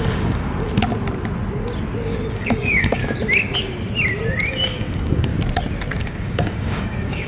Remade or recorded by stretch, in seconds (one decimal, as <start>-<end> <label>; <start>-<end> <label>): 0.0-0.7 remade; 0.7-2.3 recorded; 2.3-3.0 remade; 3.0-4.5 recorded; 4.5-5.3 remade; 5.3-6.0 recorded; 6.0-7.3 remade